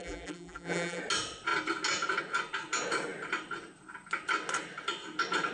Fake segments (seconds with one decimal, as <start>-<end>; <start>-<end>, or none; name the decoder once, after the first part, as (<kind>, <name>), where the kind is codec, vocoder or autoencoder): 0.0-1.0 (vocoder, BigVGAN v2)